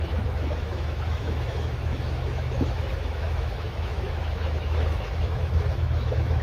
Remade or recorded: remade